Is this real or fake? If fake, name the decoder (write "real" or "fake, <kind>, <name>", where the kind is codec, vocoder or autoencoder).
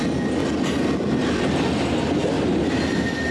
real